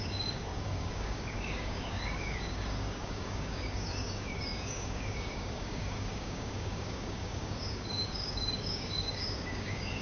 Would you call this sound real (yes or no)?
no